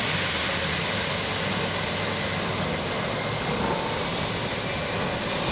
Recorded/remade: recorded